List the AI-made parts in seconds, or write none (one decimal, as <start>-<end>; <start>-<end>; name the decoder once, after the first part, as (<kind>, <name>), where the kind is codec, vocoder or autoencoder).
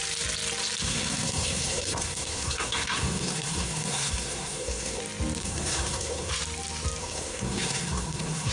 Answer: 0.8-5.0 (codec, SNAC); 5.4-6.3; 7.0-8.5